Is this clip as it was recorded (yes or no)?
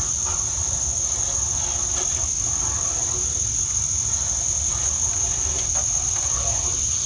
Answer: yes